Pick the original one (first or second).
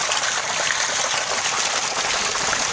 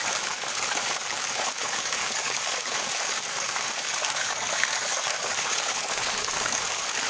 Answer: first